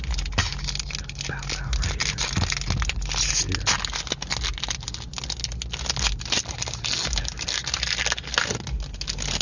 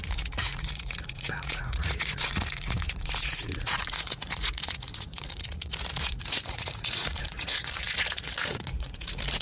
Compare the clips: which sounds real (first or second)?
first